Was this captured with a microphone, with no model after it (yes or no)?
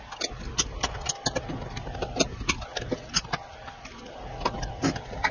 yes